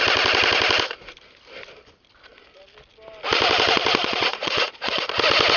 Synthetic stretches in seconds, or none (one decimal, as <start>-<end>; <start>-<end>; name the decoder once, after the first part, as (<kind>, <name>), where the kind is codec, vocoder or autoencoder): 4.0-5.0 (vocoder, Vocos)